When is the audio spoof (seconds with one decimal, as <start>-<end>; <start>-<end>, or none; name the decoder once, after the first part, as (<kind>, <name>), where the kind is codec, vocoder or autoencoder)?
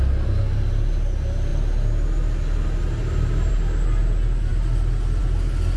none